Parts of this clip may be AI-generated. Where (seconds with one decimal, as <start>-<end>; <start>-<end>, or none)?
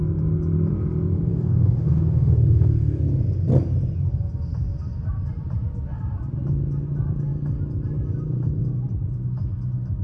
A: 1.3-3.0